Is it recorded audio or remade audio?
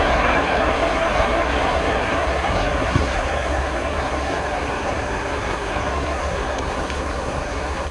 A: remade